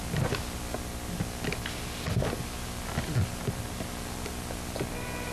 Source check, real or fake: real